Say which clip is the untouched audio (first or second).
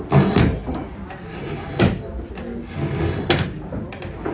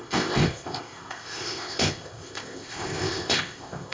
first